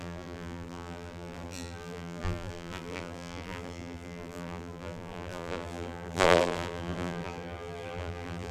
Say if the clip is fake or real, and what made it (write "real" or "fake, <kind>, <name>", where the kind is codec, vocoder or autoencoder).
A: fake, vocoder, BigVGAN v2